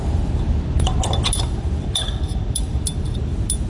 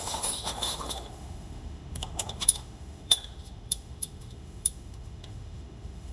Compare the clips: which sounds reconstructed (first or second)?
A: second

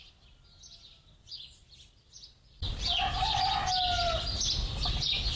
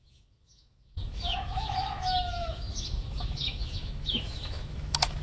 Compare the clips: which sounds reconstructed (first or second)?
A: second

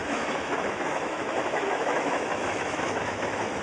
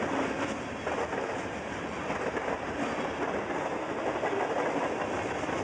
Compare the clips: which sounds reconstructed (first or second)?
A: first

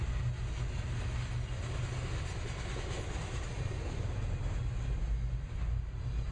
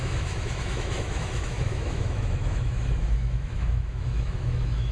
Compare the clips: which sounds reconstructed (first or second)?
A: second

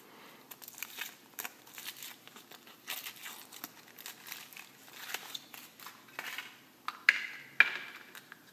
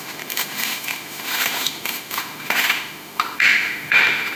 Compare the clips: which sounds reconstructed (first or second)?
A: second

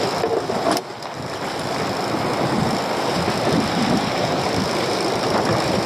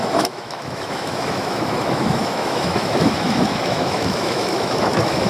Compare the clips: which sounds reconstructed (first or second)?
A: second